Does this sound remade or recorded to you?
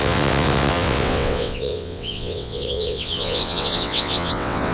remade